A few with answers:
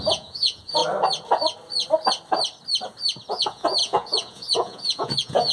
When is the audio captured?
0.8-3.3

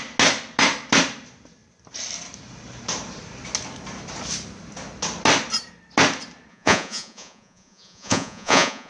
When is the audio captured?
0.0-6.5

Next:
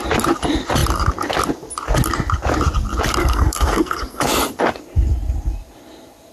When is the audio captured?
0.0-3.2; 4.2-6.3